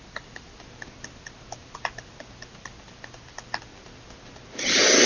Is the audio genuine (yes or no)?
yes